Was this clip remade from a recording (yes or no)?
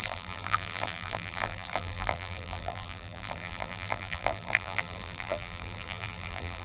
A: yes